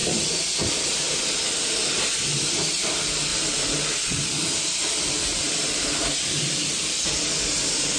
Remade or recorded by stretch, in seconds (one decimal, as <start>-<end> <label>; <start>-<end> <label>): 0.0-1.3 remade; 1.3-3.3 recorded; 3.3-8.0 remade